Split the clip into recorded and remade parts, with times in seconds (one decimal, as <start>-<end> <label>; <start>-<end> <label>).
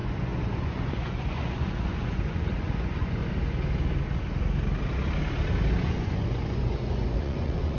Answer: 0.0-3.2 remade; 3.2-5.8 recorded; 5.8-7.8 remade